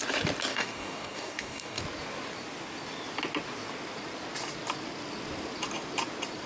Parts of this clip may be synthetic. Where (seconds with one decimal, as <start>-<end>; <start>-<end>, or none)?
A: 0.5-1.8